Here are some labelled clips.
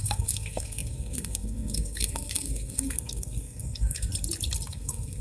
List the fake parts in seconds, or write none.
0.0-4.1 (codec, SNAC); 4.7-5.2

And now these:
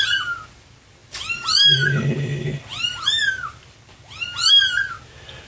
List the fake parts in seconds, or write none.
none

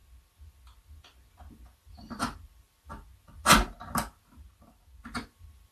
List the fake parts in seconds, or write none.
1.5-3.1 (vocoder, BigVGAN v2); 5.0-5.7

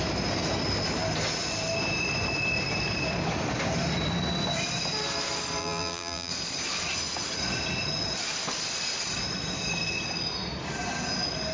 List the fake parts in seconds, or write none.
5.6-6.3 (vocoder, BigVGAN v2)

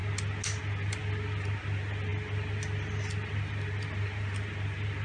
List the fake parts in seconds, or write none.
none